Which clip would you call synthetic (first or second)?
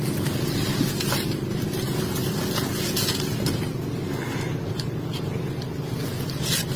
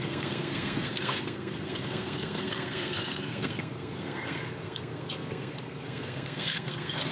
second